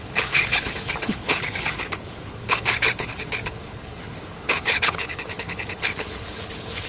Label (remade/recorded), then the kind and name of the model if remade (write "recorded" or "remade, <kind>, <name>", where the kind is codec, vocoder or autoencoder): remade, codec, HILCodec